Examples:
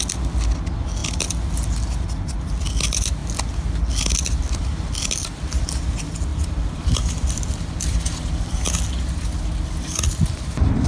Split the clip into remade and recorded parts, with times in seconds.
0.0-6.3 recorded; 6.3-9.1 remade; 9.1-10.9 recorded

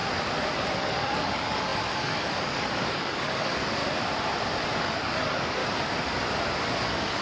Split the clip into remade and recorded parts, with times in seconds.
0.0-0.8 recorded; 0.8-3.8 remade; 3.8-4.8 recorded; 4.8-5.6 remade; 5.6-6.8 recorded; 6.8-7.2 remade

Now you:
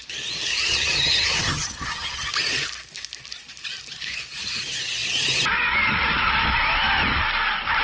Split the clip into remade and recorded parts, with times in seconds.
0.0-0.5 recorded; 0.5-2.3 remade; 2.3-7.8 recorded

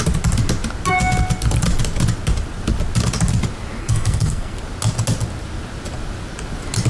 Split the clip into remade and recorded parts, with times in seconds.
0.0-3.8 recorded; 3.8-4.6 remade; 4.6-6.9 recorded

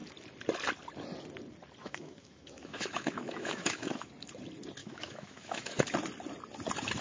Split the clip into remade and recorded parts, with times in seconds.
0.0-1.8 recorded; 1.8-4.1 remade; 4.1-4.8 recorded; 4.8-5.8 remade; 5.8-7.0 recorded

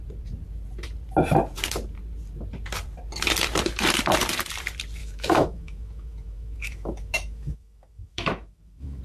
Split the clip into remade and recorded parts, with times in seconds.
0.0-5.0 recorded; 5.0-9.0 remade